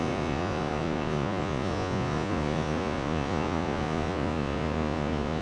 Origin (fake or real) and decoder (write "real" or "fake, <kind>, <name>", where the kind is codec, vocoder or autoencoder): fake, vocoder, Vocos